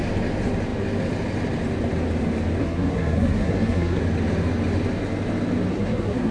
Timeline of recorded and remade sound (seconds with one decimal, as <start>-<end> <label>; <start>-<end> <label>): 0.0-2.6 recorded; 2.6-4.0 remade; 4.0-5.7 recorded; 5.7-6.3 remade